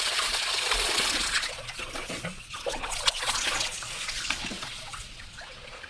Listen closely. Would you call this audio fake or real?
fake